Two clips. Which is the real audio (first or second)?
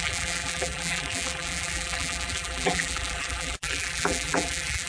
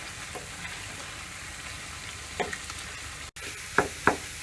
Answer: second